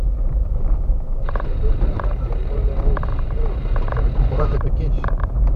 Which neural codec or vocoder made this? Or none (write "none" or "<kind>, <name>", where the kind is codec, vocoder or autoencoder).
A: vocoder, BigVGAN v2